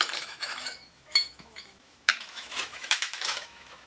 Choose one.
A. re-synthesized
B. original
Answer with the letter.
A